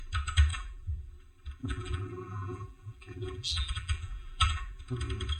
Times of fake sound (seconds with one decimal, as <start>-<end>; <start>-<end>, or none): 0.5-1.1; 1.6-4.8

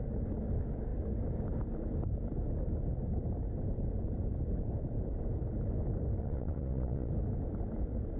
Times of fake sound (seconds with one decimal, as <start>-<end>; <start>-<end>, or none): 6.2-7.1

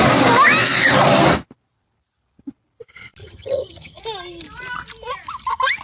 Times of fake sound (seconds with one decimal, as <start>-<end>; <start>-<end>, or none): 3.2-4.0